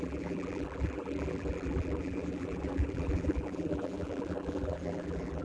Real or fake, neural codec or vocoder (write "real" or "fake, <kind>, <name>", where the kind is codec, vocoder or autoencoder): fake, vocoder, BigVGAN v2